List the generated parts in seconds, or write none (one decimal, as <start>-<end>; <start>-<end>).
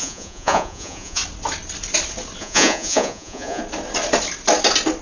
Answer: 0.0-1.2; 2.4-3.6